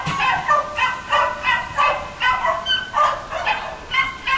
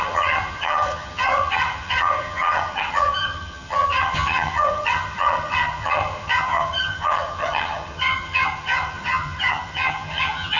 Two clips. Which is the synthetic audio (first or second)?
second